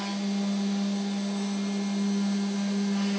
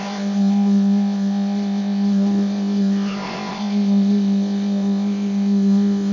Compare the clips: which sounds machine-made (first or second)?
second